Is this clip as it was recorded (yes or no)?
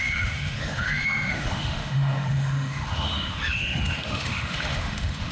no